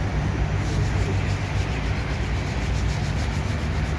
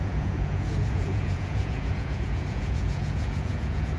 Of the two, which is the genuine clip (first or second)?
first